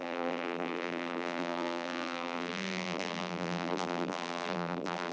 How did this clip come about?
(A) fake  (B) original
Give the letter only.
A